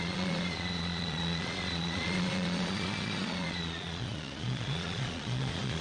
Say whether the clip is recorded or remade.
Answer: remade